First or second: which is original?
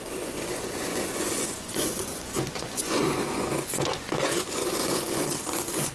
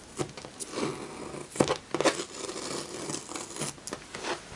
second